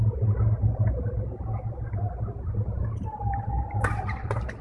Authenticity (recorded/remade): recorded